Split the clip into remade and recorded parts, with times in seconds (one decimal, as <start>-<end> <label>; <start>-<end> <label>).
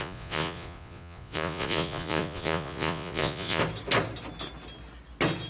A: 0.0-3.6 remade; 3.6-5.5 recorded